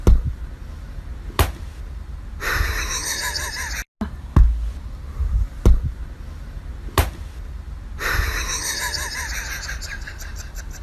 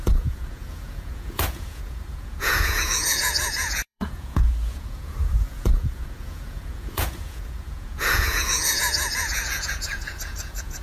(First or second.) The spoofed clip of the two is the second